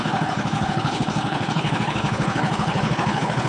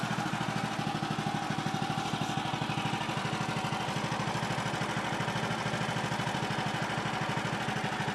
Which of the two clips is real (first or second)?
second